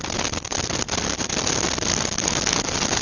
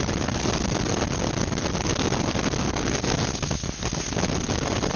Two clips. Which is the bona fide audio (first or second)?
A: second